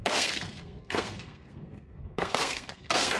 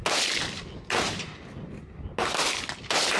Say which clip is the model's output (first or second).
first